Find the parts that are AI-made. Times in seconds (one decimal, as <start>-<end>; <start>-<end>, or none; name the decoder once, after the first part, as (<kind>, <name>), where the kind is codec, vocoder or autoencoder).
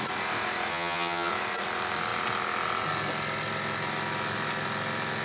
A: 0.7-1.3 (vocoder, HiFi-GAN)